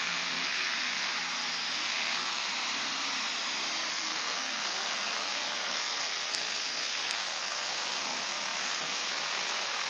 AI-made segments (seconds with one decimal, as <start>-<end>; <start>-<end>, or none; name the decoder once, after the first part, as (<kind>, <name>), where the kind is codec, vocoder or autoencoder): 0.0-1.1 (codec, SNAC); 1.7-2.5; 3.9-9.9